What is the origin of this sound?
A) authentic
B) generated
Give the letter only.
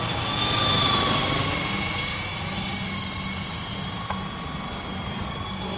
A